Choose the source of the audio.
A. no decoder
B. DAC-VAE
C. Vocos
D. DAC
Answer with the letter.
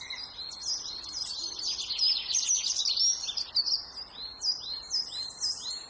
A